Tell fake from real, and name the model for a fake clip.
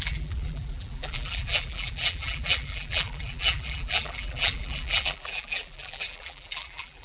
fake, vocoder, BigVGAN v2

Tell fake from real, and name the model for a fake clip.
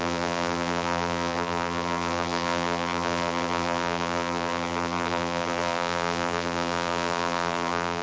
fake, vocoder, BigVGAN v2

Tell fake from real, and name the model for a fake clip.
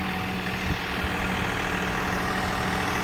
real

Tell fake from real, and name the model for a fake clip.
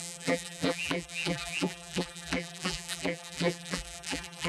fake, vocoder, BigVGAN v2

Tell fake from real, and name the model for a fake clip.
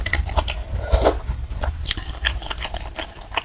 fake, vocoder, BigVGAN v2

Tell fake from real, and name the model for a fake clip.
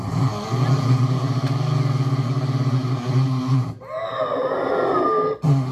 real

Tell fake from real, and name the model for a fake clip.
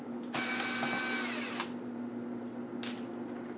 real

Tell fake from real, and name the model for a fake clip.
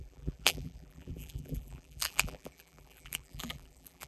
fake, vocoder, BigVGAN v2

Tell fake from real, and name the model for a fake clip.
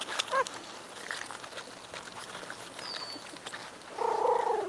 real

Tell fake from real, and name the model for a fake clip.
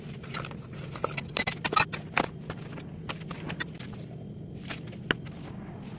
real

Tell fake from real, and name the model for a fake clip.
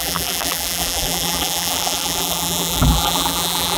fake, vocoder, BigVGAN v2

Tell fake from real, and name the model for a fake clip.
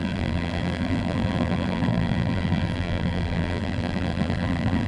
fake, vocoder, BigVGAN v2